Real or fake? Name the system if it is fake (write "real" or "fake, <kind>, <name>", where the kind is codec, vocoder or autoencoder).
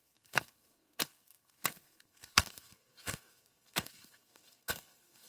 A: fake, codec, SNAC